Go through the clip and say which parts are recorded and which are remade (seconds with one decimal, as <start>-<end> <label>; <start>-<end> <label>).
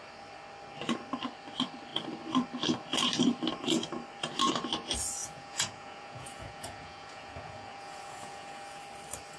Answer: 0.0-5.2 recorded; 5.2-8.8 remade; 8.8-9.4 recorded